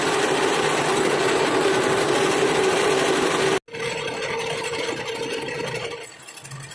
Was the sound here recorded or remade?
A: recorded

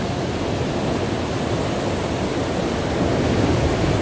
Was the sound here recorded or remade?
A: recorded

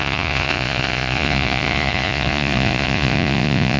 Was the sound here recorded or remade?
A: remade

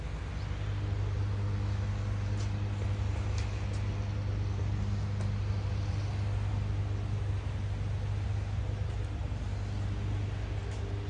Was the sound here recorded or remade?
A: recorded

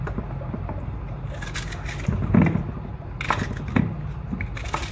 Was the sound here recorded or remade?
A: recorded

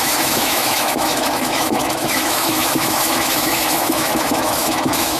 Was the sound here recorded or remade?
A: remade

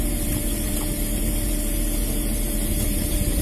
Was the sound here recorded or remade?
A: remade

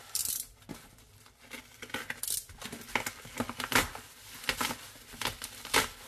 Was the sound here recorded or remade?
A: recorded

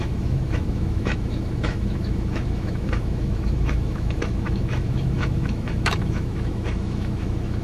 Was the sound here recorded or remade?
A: remade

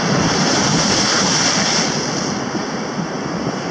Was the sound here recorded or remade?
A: recorded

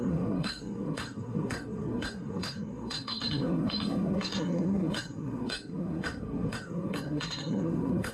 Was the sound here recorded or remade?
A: remade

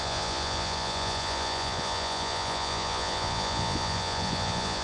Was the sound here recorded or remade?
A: remade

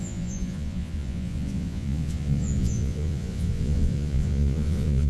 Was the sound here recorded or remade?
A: remade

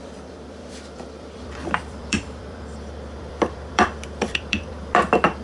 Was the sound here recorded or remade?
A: remade